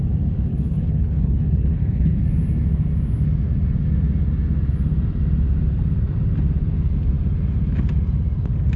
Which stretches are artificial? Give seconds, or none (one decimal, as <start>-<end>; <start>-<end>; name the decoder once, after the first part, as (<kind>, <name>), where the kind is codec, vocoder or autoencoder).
0.5-2.2 (codec, HILCodec)